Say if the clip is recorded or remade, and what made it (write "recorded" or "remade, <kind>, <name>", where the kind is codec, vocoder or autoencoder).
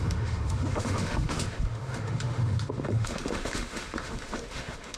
remade, autoencoder, DAC-VAE